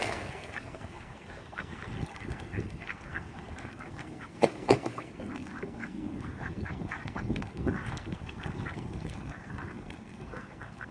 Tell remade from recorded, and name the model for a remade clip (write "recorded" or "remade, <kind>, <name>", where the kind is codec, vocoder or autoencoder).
remade, codec, SNAC